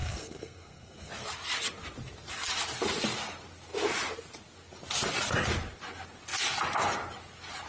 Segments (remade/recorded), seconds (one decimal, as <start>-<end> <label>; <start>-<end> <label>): 0.0-1.1 remade; 1.1-7.7 recorded